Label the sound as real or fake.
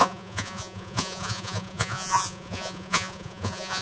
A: fake